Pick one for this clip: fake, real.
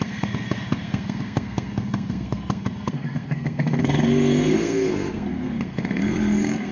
fake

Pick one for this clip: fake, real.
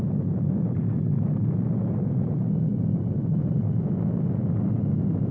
real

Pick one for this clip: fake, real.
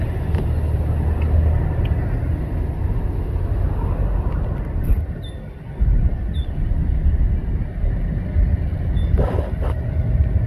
real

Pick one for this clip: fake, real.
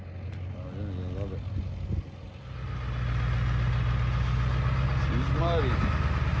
real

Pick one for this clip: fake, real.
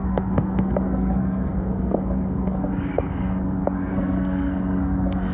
fake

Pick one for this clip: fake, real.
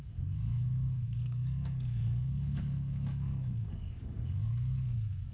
fake